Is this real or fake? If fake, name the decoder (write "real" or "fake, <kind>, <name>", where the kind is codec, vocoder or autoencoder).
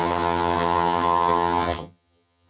fake, vocoder, HiFi-GAN